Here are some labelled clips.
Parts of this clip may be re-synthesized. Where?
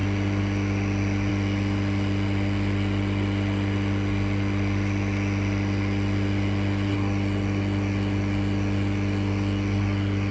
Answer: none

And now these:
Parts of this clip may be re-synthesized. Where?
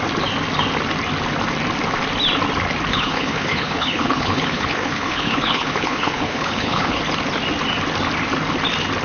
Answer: 2.9-7.0 (codec, HILCodec)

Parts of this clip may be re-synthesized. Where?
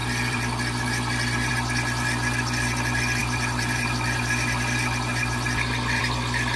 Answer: 0.0-1.5 (vocoder, BigVGAN v2); 3.2-6.0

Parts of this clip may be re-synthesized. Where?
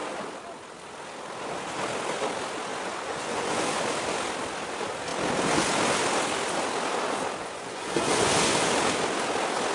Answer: 2.7-3.8 (vocoder, Vocos); 7.4-8.7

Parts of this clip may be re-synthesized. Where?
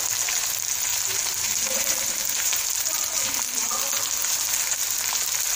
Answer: 0.9-3.7 (vocoder, BigVGAN v2); 4.2-4.8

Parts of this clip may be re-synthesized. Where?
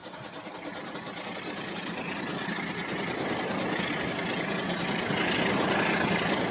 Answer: none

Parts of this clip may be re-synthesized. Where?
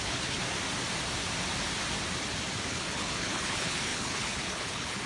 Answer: 0.0-0.4 (codec, HILCodec); 2.7-5.1